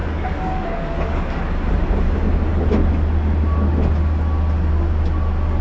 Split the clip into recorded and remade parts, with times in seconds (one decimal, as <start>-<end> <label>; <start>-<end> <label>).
0.0-1.5 remade; 1.5-5.6 recorded

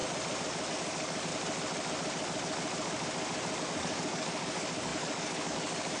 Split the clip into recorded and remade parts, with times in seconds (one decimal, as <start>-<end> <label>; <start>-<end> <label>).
0.0-0.7 recorded; 0.7-1.3 remade; 1.3-3.6 recorded; 3.6-6.0 remade

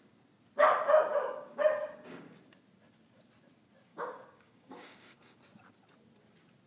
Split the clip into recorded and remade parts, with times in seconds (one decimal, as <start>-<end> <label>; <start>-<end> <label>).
0.0-1.1 recorded; 1.1-2.4 remade; 2.4-3.9 recorded; 3.9-5.4 remade; 5.4-6.7 recorded

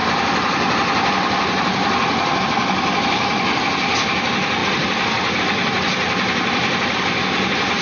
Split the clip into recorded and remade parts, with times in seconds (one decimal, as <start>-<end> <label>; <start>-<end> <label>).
0.0-7.8 recorded

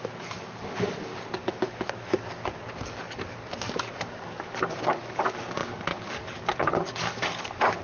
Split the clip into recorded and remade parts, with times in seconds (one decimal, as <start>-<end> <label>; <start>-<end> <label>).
0.0-7.8 remade

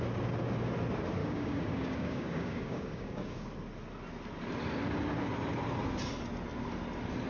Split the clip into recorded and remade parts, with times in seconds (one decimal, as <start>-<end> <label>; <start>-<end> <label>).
0.0-1.2 recorded; 1.2-3.5 remade; 3.5-7.3 recorded

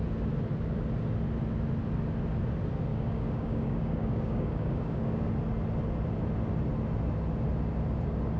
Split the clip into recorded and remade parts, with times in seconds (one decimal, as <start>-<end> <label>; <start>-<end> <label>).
0.0-2.9 recorded; 2.9-5.3 remade; 5.3-8.4 recorded

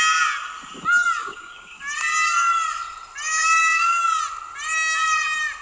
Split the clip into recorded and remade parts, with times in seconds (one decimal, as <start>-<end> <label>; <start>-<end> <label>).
0.0-1.2 recorded; 1.2-1.8 remade; 1.8-3.6 recorded; 3.6-4.2 remade; 4.2-5.6 recorded